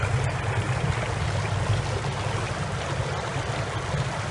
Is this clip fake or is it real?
real